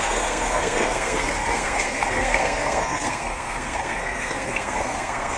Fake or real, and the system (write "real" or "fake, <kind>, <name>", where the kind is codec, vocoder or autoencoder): fake, codec, SNAC